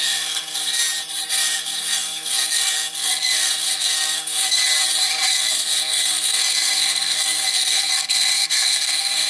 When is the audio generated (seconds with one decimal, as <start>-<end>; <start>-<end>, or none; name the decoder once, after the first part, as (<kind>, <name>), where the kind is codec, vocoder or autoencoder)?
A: 0.0-0.8 (codec, SNAC); 1.3-4.6; 5.3-9.3